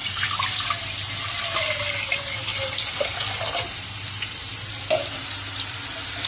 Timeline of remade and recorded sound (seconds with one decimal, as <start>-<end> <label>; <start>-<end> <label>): 0.0-2.5 recorded; 2.5-4.8 remade; 4.8-6.3 recorded